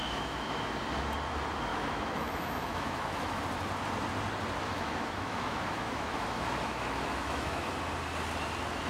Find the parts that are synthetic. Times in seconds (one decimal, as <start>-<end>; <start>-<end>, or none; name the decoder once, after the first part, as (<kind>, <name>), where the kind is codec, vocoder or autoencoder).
0.0-0.6 (autoencoder, DAC-VAE); 1.7-3.4; 4.6-7.7